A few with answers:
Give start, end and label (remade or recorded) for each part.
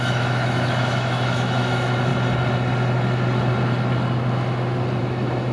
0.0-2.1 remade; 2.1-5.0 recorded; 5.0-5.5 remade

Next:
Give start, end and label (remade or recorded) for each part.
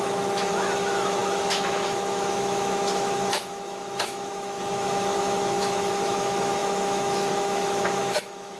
0.0-8.6 remade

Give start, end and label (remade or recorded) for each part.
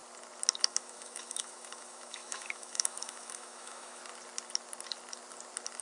0.0-0.6 recorded; 0.6-4.0 remade; 4.0-5.8 recorded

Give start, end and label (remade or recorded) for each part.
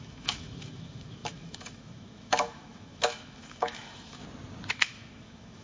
0.0-4.2 remade; 4.2-4.7 recorded; 4.7-5.6 remade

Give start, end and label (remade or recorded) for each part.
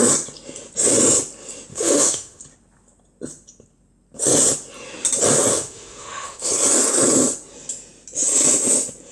0.0-1.7 recorded; 1.7-2.4 remade; 2.4-5.5 recorded; 5.5-6.5 remade; 6.5-9.1 recorded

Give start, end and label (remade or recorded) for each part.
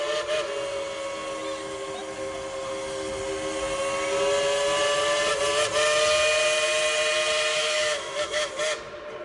0.0-7.5 recorded; 7.5-8.5 remade; 8.5-9.2 recorded